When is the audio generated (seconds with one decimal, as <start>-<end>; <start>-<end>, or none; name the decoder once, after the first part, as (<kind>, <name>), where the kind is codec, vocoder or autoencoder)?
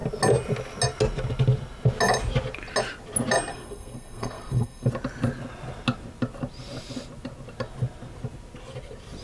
3.5-4.9 (codec, SNAC)